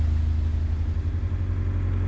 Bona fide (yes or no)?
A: yes